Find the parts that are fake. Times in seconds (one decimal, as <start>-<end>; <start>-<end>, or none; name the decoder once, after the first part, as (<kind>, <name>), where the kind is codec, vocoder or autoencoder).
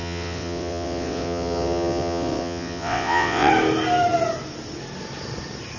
0.0-3.5 (vocoder, WaveNeXt)